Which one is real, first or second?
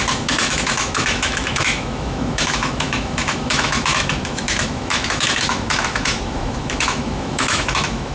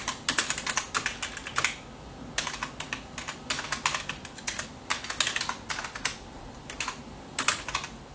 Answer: second